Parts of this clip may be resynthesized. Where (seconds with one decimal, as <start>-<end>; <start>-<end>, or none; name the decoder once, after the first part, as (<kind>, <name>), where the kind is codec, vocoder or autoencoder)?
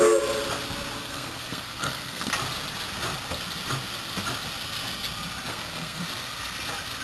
1.0-2.3 (codec, SNAC); 5.5-6.0